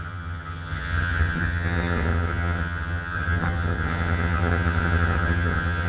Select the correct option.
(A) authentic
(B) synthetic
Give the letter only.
B